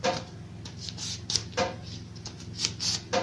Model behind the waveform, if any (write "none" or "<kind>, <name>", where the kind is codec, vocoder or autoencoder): none